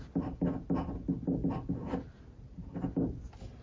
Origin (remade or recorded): recorded